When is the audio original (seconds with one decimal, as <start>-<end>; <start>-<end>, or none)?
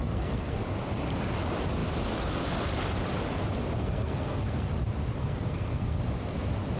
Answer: 0.6-3.8; 4.7-5.2; 6.0-6.8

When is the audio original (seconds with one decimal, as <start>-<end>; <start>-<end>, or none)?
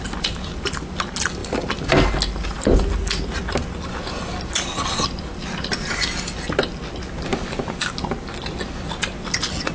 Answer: 0.0-9.7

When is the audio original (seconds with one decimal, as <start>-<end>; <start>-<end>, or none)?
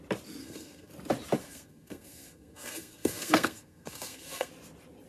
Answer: 0.0-0.4; 0.9-1.4; 4.5-5.1